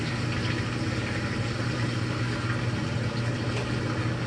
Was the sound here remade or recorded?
recorded